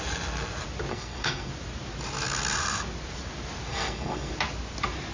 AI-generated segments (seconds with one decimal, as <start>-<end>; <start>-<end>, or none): 0.9-1.5; 3.7-4.3